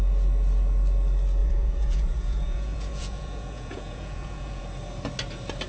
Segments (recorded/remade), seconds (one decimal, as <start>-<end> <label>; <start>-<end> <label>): 0.0-1.4 recorded; 1.4-4.6 remade; 4.6-5.7 recorded